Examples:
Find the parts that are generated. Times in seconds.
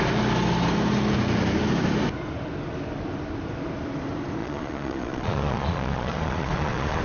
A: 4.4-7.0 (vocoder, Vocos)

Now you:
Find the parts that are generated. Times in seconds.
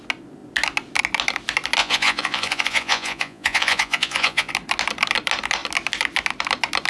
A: 1.8-4.5 (vocoder, Vocos)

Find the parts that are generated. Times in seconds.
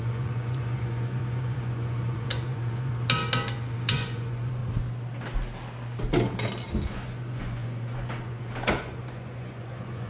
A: 0.0-2.9 (vocoder, Vocos); 3.9-4.6; 6.7-10.1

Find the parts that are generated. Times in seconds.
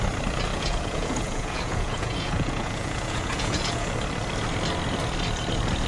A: 0.5-3.9 (vocoder, Vocos)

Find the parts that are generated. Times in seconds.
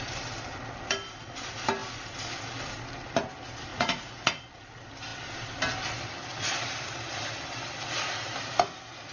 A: 3.7-4.4 (vocoder, Vocos)